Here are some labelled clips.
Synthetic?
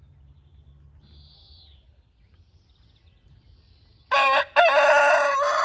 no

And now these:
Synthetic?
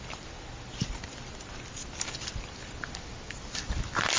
no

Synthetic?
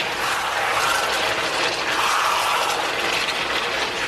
no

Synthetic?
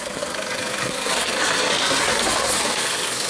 yes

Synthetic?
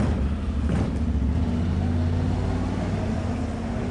no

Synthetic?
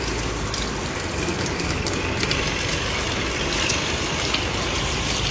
yes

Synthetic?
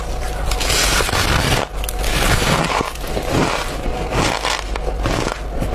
no